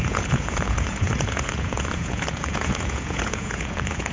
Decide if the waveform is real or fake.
fake